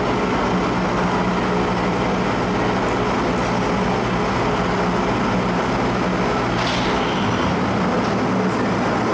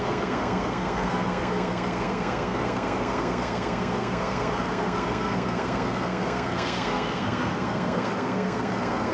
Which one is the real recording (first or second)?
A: first